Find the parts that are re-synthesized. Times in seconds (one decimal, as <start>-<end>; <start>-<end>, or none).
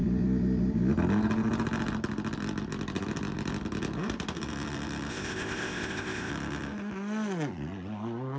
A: 5.1-6.3